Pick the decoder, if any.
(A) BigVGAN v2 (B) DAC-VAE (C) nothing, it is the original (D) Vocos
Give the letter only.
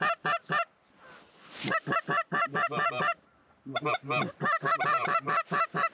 C